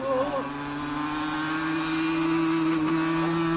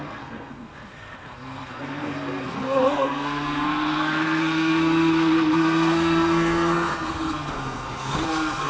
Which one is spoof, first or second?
second